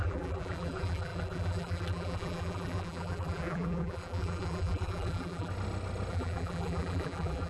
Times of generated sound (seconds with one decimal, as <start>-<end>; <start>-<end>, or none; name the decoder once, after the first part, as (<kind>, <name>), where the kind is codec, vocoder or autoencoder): 0.0-5.5 (vocoder, BigVGAN v2); 6.1-7.5